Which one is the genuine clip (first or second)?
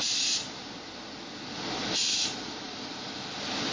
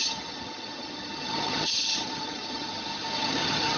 first